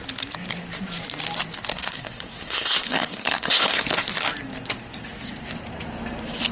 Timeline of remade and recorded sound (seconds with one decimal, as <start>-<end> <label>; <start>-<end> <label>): 0.0-1.7 recorded; 1.7-3.8 remade; 3.8-6.5 recorded